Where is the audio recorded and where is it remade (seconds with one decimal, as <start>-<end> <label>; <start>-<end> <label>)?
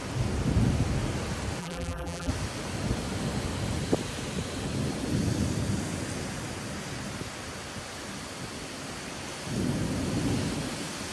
0.0-1.6 recorded; 1.6-2.3 remade; 2.3-11.1 recorded